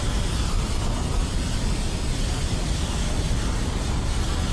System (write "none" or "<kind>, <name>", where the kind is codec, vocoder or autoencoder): none